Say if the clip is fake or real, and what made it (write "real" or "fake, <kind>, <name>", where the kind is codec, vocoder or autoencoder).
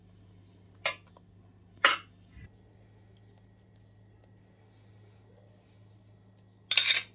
real